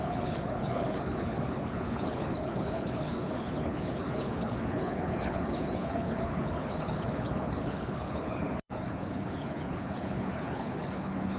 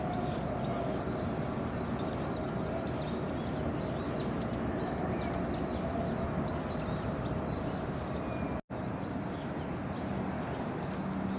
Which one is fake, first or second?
first